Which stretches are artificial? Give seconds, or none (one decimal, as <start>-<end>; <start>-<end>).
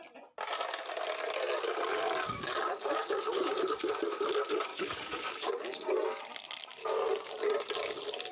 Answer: 1.9-3.8; 4.7-5.5; 6.8-7.3